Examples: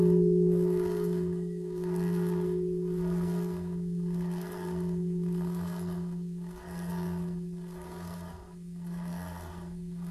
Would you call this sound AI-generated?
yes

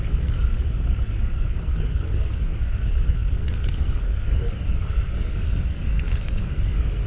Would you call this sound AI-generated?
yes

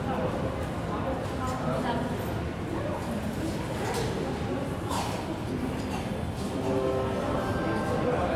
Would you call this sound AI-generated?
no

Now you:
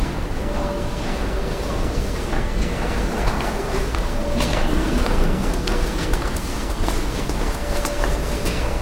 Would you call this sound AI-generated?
yes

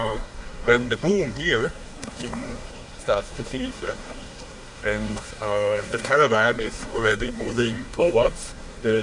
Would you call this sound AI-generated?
yes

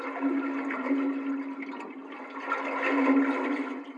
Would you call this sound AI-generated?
no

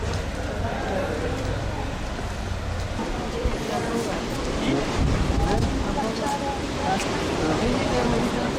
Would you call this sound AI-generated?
no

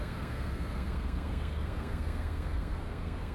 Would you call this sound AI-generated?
yes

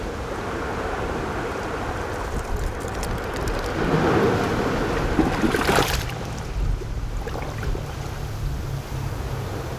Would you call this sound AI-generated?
no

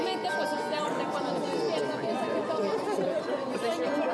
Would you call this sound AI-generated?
no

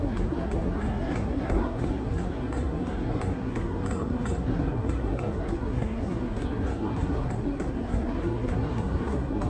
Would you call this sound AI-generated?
yes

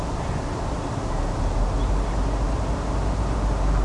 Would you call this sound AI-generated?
no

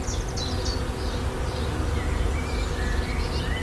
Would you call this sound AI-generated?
no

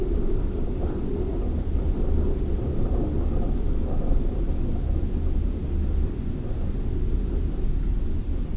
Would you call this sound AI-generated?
no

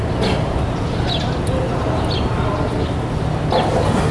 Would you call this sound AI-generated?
no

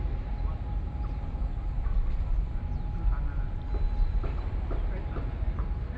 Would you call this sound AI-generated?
no